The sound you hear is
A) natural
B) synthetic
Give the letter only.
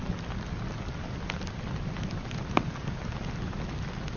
A